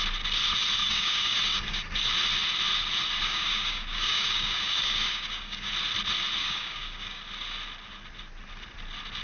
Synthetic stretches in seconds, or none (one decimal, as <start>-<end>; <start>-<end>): 0.8-1.8; 3.2-5.7; 6.4-7.2